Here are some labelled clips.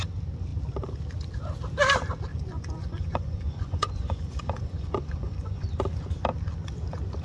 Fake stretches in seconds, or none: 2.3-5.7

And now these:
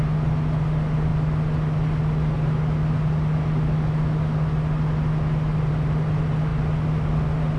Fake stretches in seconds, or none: none

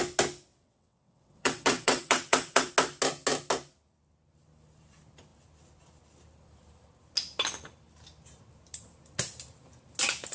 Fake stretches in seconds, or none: 0.5-2.7